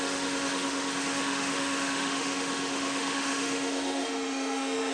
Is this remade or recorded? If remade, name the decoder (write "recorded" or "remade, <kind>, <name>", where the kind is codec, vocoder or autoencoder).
remade, autoencoder, DAC-VAE